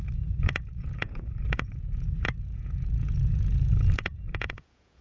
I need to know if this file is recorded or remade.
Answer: remade